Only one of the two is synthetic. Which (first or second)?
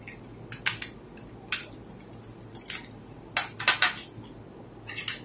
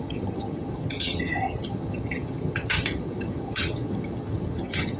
second